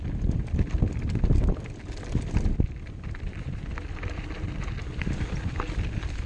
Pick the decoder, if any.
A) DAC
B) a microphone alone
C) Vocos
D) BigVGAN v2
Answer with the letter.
B